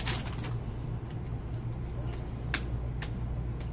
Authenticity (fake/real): real